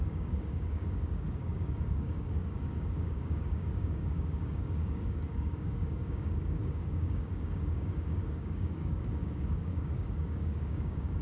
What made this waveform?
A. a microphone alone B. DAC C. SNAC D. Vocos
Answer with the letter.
B